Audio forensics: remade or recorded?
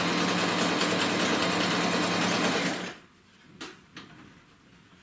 recorded